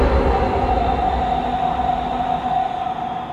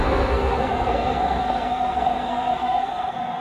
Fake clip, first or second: second